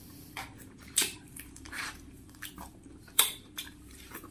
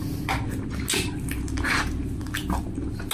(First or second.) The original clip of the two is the second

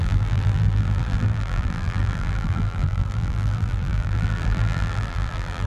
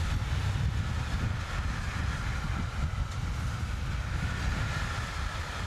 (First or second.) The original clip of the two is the second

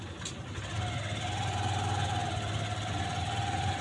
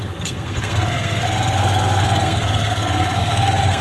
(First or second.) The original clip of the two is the first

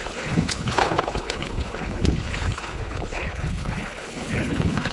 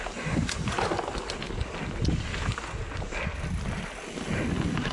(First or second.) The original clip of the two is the second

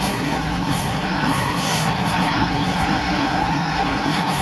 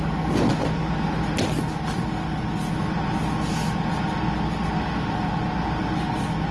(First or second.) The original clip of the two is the second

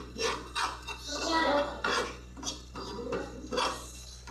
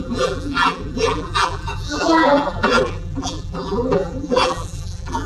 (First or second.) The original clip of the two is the first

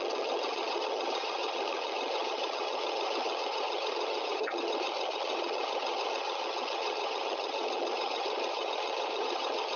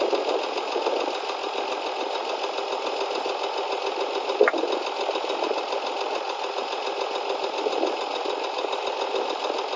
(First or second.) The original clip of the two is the second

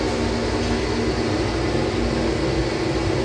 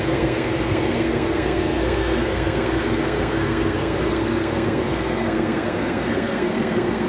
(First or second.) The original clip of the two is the first